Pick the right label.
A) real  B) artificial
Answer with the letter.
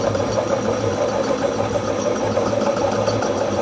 A